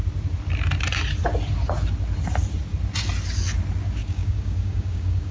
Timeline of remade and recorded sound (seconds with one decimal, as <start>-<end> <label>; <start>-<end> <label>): 0.0-4.0 recorded; 4.0-5.3 remade